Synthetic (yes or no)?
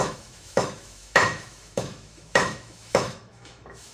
yes